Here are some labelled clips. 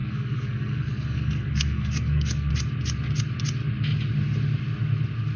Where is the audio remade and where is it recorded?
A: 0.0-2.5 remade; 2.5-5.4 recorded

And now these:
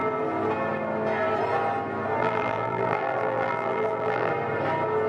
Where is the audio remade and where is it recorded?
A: 0.0-2.2 recorded; 2.2-4.3 remade; 4.3-5.1 recorded

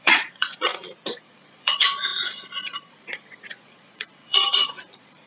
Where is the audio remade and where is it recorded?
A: 0.0-0.7 remade; 0.7-1.3 recorded; 1.3-5.3 remade

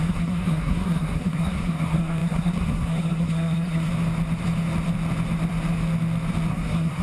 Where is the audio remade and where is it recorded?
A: 0.0-3.9 remade; 3.9-6.5 recorded; 6.5-7.0 remade

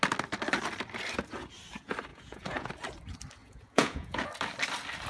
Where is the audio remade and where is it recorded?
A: 0.0-2.1 recorded; 2.1-2.7 remade; 2.7-3.4 recorded; 3.4-4.3 remade; 4.3-5.1 recorded

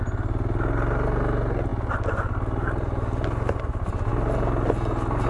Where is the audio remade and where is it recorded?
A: 0.0-5.3 recorded

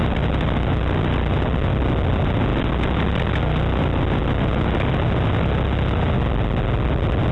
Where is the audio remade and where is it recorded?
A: 0.0-7.3 recorded

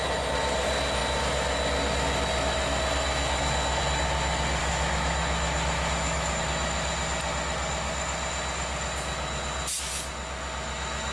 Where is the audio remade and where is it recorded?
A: 0.0-4.6 recorded; 4.6-6.4 remade; 6.4-11.1 recorded